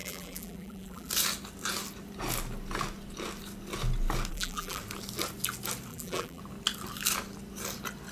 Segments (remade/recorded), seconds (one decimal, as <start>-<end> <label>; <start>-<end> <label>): 0.0-1.1 remade; 1.1-4.3 recorded; 4.3-4.8 remade; 4.8-5.9 recorded; 5.9-6.4 remade; 6.4-8.1 recorded

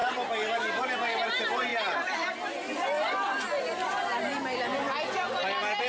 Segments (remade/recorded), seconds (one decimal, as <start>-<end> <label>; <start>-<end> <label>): 0.0-5.9 recorded

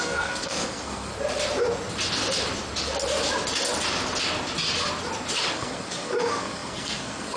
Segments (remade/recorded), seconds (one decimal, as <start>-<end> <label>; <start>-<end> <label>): 0.0-1.1 remade; 1.1-5.5 recorded; 5.5-7.4 remade

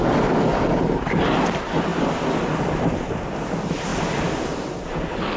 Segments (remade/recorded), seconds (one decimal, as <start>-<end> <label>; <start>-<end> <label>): 0.0-3.9 recorded; 3.9-5.4 remade

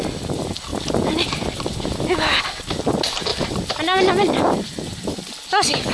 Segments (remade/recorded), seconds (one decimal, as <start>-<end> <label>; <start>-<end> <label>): 0.0-5.9 recorded

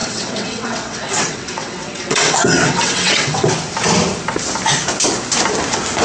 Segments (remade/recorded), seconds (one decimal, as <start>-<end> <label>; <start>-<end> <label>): 0.0-3.5 remade; 3.5-6.0 recorded

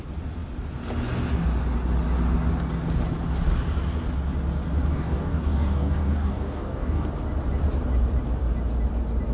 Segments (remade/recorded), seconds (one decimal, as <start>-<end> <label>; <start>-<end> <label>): 0.0-4.9 recorded; 4.9-7.1 remade; 7.1-9.3 recorded